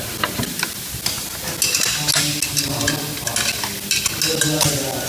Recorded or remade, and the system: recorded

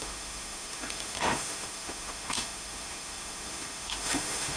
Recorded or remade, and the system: remade, autoencoder, DAC-VAE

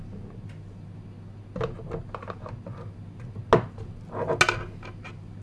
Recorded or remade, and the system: recorded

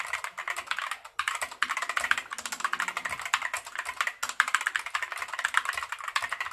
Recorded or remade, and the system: recorded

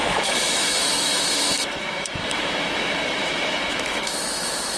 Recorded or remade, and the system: remade, autoencoder, DAC-VAE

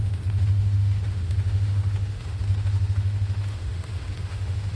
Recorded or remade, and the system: remade, autoencoder, DAC-VAE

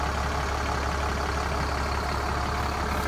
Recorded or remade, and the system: recorded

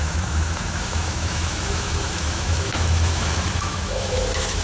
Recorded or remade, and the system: remade, autoencoder, DAC-VAE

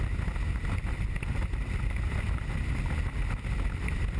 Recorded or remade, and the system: recorded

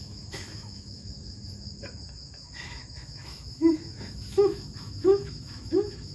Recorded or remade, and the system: remade, autoencoder, DAC-VAE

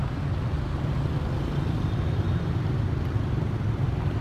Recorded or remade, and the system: recorded